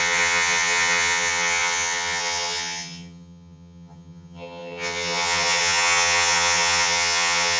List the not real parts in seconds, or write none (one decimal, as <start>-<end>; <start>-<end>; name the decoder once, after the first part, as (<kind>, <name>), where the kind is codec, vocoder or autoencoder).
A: 0.0-7.6 (vocoder, HiFi-GAN)